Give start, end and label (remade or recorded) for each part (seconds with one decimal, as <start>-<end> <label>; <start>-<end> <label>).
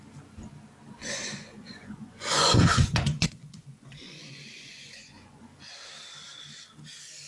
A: 0.0-1.0 recorded; 1.0-5.4 remade; 5.4-7.3 recorded